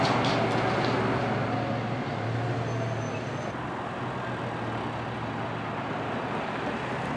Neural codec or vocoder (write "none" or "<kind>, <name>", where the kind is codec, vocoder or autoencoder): none